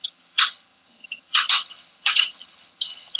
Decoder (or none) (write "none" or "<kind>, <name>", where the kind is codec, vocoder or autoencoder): vocoder, HiFi-GAN